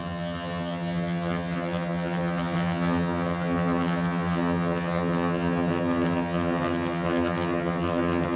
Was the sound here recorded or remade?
remade